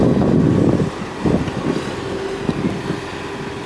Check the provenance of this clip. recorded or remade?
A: recorded